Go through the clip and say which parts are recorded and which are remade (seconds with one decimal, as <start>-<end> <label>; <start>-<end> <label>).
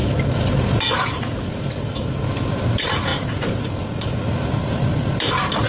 0.0-5.7 recorded